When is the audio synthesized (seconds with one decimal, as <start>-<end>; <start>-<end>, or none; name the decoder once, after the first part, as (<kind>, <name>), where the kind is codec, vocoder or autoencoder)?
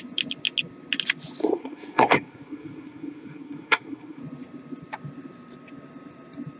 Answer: 1.4-4.2 (codec, SNAC)